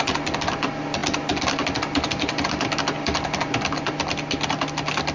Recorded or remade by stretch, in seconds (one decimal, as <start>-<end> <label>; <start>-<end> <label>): 0.0-5.1 recorded